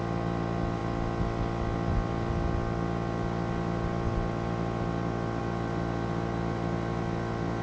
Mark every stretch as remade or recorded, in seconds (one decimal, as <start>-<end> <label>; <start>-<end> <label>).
0.0-7.6 recorded